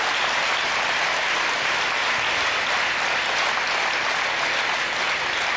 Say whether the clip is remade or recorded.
recorded